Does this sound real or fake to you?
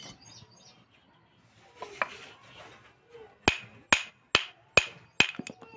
real